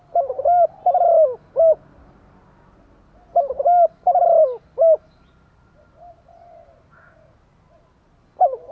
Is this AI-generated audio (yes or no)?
no